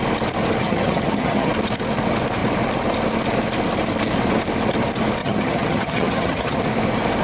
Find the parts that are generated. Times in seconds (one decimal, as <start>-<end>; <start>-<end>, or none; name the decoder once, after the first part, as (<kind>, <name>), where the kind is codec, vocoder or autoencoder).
0.6-1.5 (vocoder, HiFi-GAN); 5.2-6.6